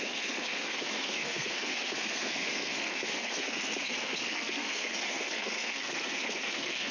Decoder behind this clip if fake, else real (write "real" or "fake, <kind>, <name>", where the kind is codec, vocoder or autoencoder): fake, codec, SNAC